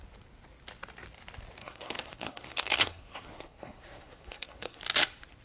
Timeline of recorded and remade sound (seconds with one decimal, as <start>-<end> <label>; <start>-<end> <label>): 0.0-1.6 recorded; 1.6-4.8 remade; 4.8-5.4 recorded